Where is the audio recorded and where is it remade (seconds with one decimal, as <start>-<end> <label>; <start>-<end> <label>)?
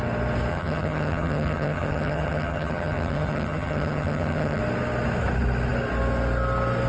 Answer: 0.0-0.5 recorded; 0.5-4.6 remade; 4.6-6.9 recorded